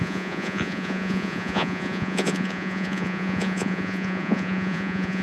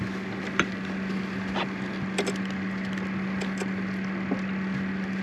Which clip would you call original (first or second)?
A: second